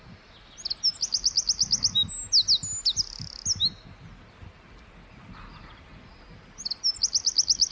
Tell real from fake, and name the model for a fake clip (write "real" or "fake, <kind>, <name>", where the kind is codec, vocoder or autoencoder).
real